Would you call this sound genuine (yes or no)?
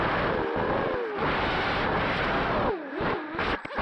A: yes